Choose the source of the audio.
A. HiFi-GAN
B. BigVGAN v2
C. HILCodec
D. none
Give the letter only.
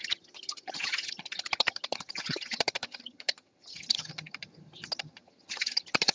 A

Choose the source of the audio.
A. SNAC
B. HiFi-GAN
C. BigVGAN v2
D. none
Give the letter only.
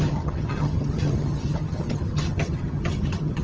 B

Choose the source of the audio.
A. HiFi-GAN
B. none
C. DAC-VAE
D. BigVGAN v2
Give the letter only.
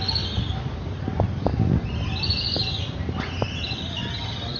B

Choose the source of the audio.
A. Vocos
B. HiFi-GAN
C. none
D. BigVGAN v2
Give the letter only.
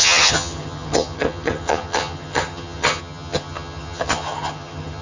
B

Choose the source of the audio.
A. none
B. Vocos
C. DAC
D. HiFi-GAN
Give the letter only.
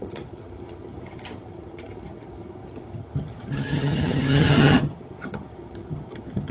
D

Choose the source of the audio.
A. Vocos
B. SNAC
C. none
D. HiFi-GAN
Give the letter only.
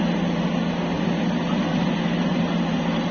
C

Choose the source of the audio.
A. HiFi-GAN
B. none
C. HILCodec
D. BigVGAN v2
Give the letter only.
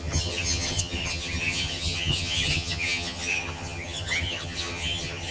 A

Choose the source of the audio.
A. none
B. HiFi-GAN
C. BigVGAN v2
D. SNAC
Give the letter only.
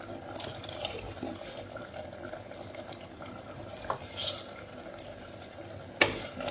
A